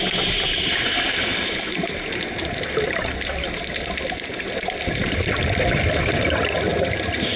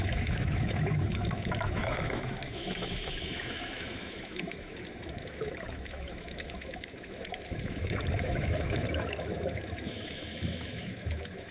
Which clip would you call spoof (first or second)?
second